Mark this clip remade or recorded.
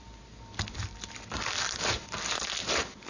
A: recorded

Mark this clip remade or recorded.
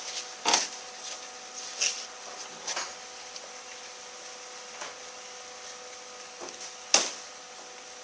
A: recorded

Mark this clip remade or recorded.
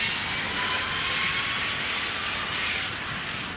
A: recorded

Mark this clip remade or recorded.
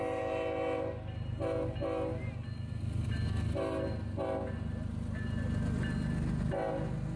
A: recorded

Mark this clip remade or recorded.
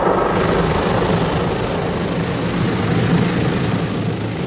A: recorded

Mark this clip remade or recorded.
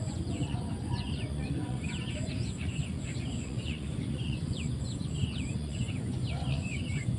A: remade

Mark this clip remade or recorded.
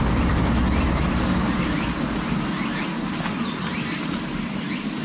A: recorded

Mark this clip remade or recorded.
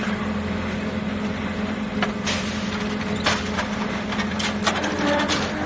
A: recorded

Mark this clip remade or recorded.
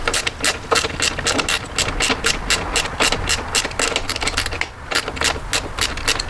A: recorded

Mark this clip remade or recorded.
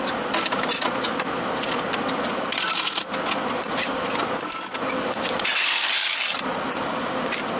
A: recorded